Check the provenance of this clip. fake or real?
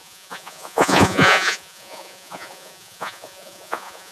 fake